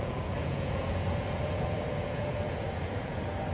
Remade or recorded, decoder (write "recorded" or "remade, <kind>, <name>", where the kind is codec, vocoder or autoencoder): remade, vocoder, Vocos